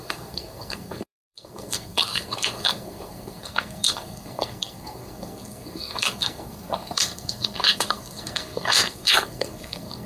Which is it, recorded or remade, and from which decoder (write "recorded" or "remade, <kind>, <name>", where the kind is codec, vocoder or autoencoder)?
remade, codec, SNAC